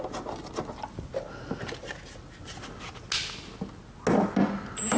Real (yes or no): yes